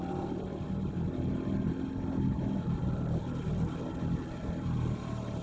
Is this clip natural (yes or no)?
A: yes